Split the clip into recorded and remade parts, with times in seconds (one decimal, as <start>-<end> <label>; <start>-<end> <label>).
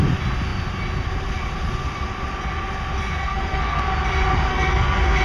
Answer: 0.0-3.2 recorded; 3.2-3.8 remade; 3.8-4.5 recorded; 4.5-5.2 remade